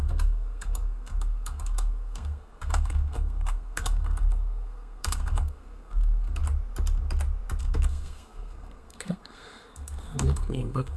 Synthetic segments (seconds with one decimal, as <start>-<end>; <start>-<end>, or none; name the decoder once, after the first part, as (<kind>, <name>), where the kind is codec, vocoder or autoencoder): 0.0-6.4 (codec, SNAC); 7.6-11.0